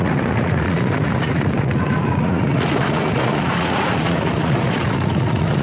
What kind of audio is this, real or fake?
fake